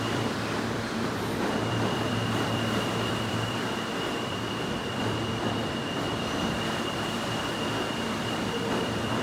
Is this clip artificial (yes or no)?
yes